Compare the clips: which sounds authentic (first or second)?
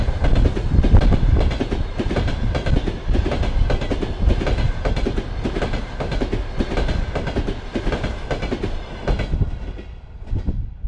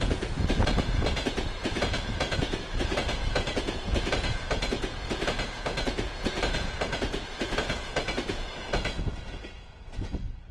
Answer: first